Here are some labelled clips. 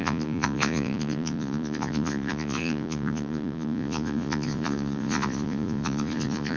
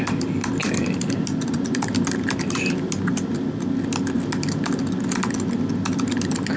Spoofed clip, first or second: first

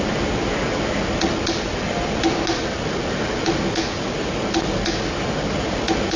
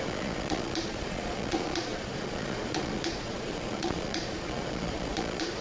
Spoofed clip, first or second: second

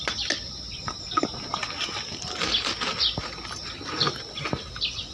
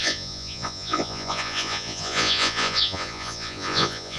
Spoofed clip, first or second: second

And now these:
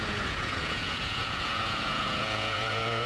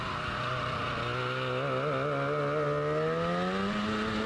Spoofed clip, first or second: first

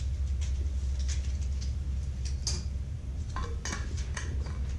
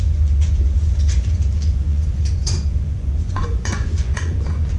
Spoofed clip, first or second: second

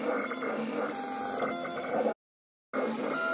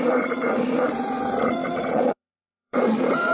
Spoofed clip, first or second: second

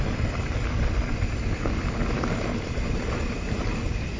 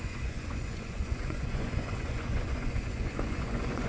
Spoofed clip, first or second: second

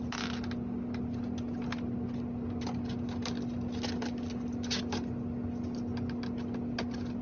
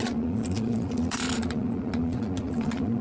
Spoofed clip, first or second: second